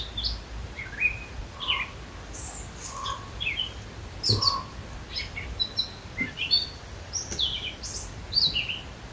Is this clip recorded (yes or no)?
yes